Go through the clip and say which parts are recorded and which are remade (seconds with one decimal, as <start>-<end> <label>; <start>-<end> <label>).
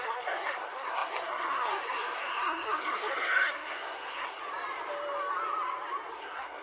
0.0-4.4 remade; 4.4-6.1 recorded; 6.1-6.6 remade